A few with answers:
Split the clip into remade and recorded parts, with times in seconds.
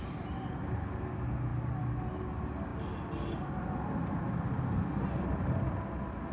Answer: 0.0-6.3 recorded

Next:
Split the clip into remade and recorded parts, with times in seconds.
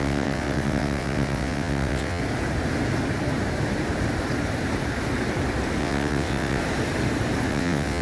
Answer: 0.0-2.2 remade; 2.2-5.8 recorded; 5.8-6.6 remade; 6.6-7.5 recorded; 7.5-8.0 remade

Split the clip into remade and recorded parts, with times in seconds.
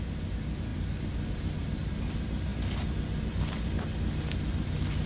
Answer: 0.0-5.1 recorded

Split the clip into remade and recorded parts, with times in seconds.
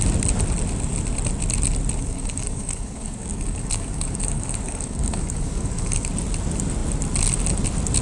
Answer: 0.0-2.0 recorded; 2.0-6.1 remade; 6.1-8.0 recorded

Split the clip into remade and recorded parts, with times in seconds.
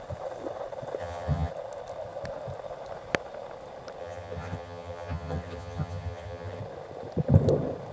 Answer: 0.0-1.0 recorded; 1.0-1.5 remade; 1.5-4.0 recorded; 4.0-6.6 remade; 6.6-7.9 recorded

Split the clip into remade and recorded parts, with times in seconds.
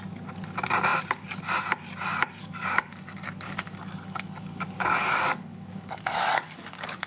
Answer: 0.0-2.4 recorded; 2.4-7.1 remade